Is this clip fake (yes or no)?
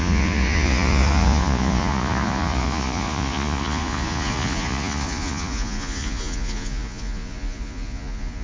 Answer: yes